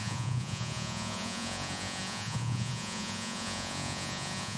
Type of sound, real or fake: fake